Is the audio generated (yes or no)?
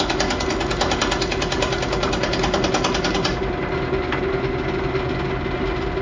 no